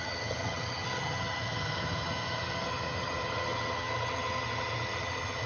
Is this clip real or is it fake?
fake